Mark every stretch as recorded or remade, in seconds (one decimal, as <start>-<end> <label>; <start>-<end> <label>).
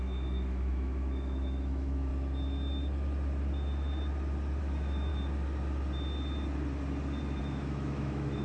0.0-2.1 remade; 2.1-4.6 recorded; 4.6-5.1 remade; 5.1-7.4 recorded; 7.4-8.4 remade